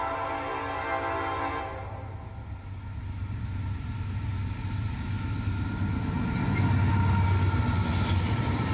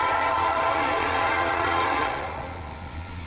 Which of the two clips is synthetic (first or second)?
second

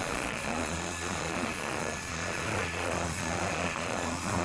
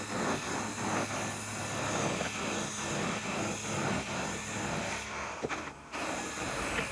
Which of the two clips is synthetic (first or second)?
first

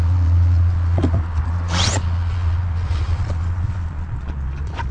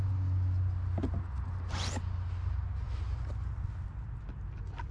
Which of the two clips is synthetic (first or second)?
first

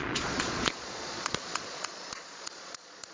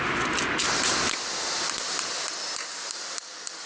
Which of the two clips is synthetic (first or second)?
first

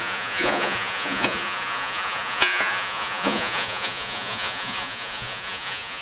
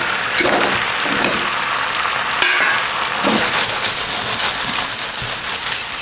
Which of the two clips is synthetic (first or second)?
first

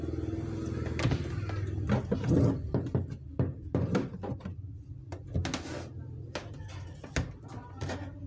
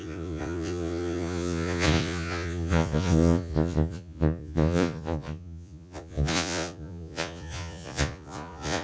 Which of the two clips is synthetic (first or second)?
second